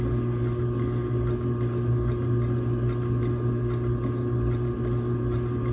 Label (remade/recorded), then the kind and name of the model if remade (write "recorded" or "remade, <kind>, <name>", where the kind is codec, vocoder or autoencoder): recorded